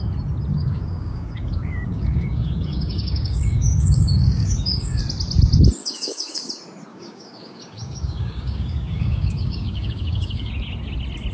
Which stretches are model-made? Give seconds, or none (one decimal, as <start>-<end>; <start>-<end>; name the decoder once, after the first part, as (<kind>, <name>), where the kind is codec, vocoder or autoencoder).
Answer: 0.5-5.0 (codec, DAC); 5.8-6.5; 6.9-10.5